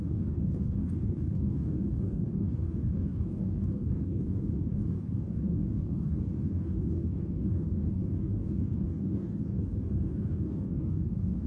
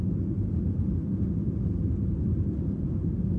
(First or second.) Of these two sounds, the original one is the second